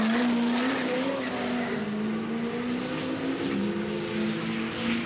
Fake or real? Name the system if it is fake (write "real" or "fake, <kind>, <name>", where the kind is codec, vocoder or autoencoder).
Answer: real